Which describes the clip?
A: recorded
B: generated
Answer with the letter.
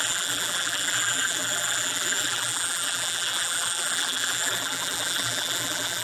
B